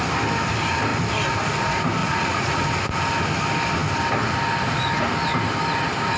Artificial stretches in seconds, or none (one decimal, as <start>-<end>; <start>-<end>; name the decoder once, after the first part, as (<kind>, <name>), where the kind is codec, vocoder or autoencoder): 2.0-2.6 (vocoder, Vocos)